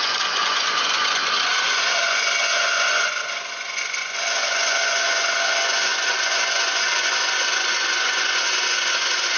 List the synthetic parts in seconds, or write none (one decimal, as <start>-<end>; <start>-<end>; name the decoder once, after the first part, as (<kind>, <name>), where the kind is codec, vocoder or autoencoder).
0.0-9.4 (vocoder, Vocos)